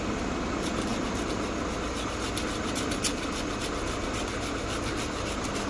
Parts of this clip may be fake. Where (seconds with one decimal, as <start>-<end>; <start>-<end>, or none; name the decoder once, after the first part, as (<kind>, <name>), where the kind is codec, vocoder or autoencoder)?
none